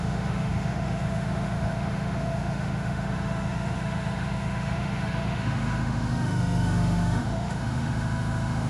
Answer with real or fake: fake